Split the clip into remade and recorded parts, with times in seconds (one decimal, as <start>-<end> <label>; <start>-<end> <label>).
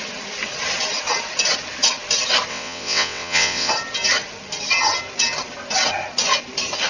0.0-2.5 recorded; 2.5-3.7 remade; 3.7-6.9 recorded